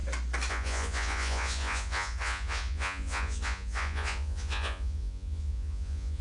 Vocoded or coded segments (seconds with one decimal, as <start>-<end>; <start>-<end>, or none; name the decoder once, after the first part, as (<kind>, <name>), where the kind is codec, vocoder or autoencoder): 0.5-6.2 (vocoder, Vocos)